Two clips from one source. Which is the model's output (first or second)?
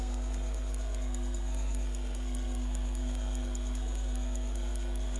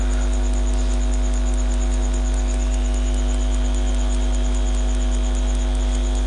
first